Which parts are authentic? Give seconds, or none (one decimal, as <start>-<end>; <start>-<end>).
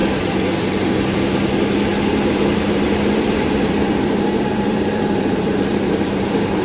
0.0-2.1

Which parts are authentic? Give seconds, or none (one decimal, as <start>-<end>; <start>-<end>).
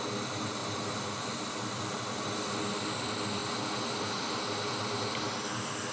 0.0-0.6; 1.5-5.9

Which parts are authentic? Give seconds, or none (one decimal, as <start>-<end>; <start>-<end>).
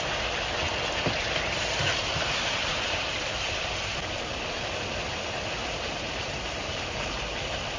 0.0-2.6; 3.2-5.6; 7.1-7.8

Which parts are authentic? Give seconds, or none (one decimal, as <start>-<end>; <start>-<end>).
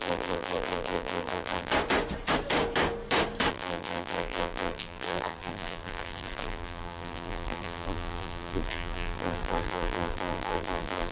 1.7-3.5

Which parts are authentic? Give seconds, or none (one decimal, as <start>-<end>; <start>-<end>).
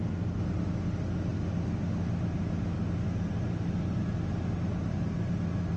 0.0-5.8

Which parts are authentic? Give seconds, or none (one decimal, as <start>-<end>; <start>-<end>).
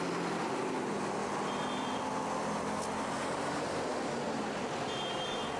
0.0-1.2; 2.0-5.6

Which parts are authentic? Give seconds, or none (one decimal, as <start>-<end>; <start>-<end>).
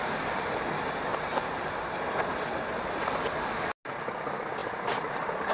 0.0-1.1; 1.7-4.6